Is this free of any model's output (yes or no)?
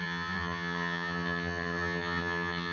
no